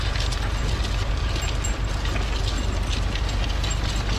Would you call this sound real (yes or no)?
yes